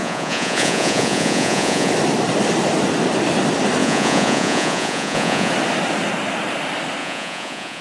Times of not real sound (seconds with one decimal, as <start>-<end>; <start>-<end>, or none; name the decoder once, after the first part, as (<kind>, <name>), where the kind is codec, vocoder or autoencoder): 0.0-1.9 (vocoder, Vocos); 3.8-5.5; 7.0-7.8